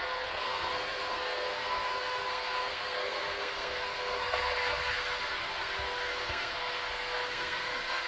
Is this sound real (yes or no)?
no